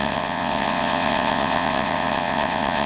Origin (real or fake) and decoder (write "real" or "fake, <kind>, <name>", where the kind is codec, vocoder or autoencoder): fake, vocoder, WaveNeXt